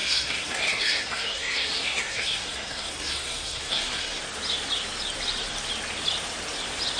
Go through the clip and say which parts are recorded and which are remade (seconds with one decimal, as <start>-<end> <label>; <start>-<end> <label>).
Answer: 0.0-4.2 remade; 4.2-7.0 recorded